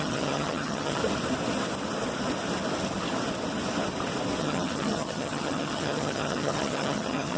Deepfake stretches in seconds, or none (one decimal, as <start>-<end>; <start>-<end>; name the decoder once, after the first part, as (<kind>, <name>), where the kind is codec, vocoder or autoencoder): 0.0-1.0 (vocoder, HiFi-GAN); 4.4-7.4